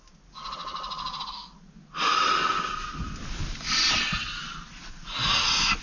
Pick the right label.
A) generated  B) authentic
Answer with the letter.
B